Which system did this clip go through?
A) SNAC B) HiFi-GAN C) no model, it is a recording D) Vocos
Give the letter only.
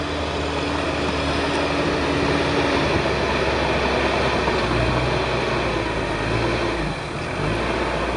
C